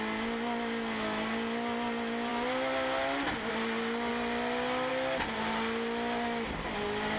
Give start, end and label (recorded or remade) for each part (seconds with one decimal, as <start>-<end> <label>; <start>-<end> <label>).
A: 0.0-7.2 recorded